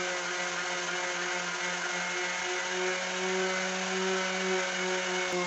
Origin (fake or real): real